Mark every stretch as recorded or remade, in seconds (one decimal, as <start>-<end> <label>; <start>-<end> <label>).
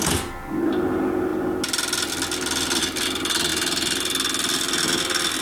0.0-5.4 recorded